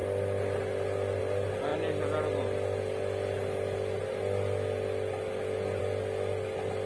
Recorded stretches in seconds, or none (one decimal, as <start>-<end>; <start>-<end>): 0.0-6.9